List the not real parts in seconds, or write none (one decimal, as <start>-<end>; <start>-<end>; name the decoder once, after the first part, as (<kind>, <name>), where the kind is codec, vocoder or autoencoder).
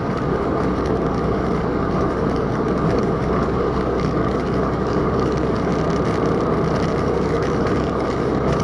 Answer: 0.0-5.7 (codec, DAC); 7.0-8.6